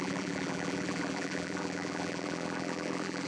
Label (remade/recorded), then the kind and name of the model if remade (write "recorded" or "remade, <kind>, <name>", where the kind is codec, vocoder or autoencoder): remade, vocoder, BigVGAN v2